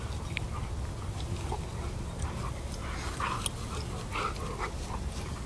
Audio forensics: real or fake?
real